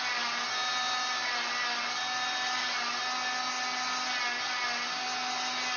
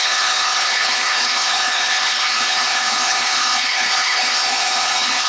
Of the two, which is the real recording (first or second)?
first